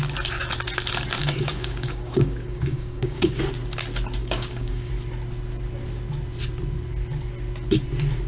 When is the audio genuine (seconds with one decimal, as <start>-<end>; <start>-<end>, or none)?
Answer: 0.0-1.2; 3.4-4.2; 4.9-8.3